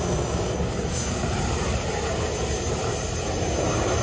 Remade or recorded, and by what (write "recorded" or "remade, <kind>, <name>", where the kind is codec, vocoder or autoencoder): recorded